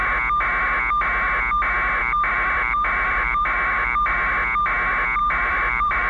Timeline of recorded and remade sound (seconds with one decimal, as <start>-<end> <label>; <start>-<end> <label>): 0.0-2.0 recorded; 2.0-4.3 remade; 4.3-5.2 recorded; 5.2-6.1 remade